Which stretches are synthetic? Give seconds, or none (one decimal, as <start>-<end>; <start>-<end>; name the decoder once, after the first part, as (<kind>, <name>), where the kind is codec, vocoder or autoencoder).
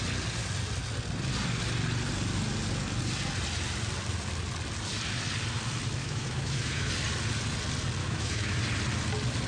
6.0-6.9 (autoencoder, DAC-VAE); 8.0-8.6